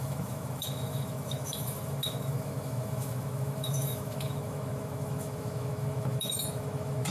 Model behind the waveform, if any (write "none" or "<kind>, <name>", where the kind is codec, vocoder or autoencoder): autoencoder, DAC-VAE